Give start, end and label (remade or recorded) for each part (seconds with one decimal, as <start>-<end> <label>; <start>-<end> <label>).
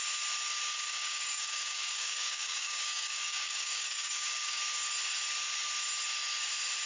0.0-0.7 recorded; 0.7-4.6 remade; 4.6-6.9 recorded